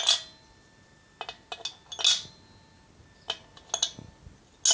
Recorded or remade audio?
recorded